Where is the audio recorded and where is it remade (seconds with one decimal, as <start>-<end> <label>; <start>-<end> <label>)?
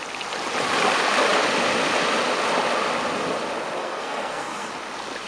0.0-3.8 recorded; 3.8-4.7 remade; 4.7-5.3 recorded